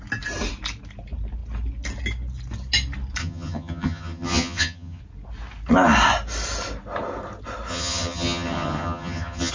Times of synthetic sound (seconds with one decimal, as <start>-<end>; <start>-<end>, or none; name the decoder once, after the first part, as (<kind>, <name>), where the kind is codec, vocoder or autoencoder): 3.2-5.0 (vocoder, HiFi-GAN); 7.7-9.5